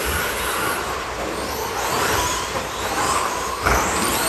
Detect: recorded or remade recorded